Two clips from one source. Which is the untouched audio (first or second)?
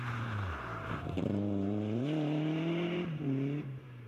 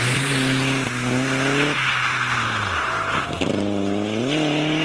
second